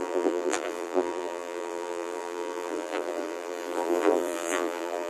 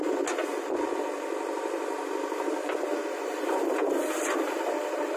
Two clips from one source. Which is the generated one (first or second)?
first